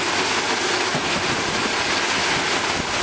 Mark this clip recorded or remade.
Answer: recorded